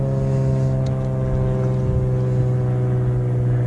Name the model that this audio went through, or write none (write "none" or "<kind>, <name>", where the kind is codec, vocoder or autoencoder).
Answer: none